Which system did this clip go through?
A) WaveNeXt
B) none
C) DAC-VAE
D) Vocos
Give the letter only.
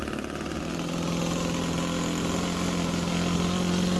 B